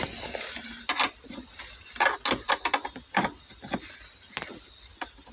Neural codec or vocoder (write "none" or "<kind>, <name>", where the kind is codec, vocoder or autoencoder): none